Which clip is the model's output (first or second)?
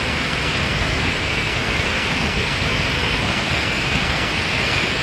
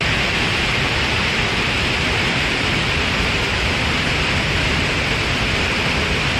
first